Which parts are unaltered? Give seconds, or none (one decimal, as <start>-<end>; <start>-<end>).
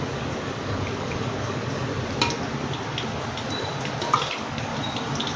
1.9-4.3; 4.7-5.4